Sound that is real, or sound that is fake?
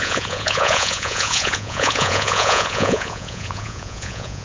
fake